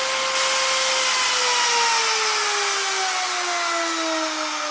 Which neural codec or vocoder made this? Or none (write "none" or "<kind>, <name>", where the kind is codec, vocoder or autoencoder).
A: none